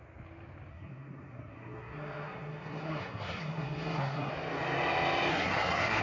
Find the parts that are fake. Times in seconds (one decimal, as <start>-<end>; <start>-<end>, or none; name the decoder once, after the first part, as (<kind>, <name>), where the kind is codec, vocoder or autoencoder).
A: 0.7-4.3 (codec, SNAC); 5.3-6.0